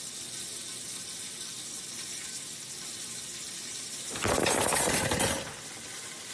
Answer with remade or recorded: recorded